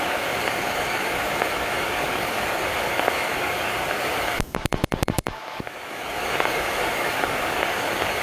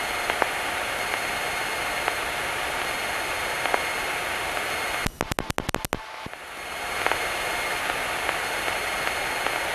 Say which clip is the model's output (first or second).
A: first